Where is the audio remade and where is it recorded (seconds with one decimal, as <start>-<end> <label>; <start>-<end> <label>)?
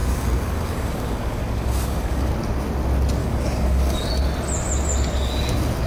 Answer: 0.0-2.3 remade; 2.3-3.2 recorded; 3.2-4.1 remade; 4.1-5.9 recorded